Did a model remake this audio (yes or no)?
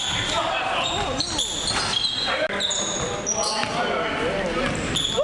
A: no